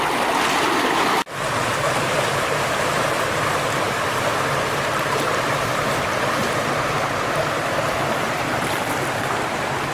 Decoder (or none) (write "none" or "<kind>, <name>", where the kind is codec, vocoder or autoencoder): none